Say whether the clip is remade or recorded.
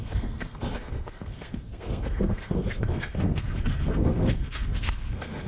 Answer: remade